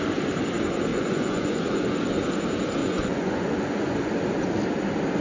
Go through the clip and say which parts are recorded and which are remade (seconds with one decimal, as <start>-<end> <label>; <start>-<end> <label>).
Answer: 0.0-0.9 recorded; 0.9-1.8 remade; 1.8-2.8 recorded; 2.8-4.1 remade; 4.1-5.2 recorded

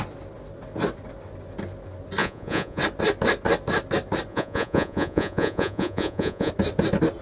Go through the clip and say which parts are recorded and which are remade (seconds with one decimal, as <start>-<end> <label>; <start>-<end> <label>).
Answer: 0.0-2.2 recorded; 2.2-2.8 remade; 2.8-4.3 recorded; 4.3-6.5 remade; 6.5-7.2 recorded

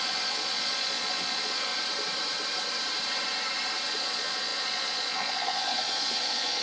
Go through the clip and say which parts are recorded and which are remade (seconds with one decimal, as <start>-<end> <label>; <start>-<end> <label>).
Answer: 0.0-1.7 remade; 1.7-4.0 recorded; 4.0-6.6 remade

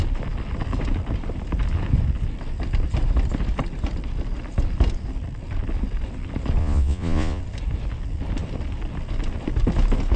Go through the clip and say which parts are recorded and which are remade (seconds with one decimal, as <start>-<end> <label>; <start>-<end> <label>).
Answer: 0.0-6.6 recorded; 6.6-7.4 remade; 7.4-10.2 recorded